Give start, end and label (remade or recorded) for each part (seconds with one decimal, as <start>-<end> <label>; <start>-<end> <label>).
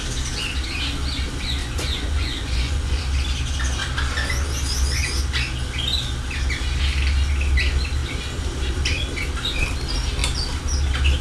0.0-1.6 recorded; 1.6-3.0 remade; 3.0-11.2 recorded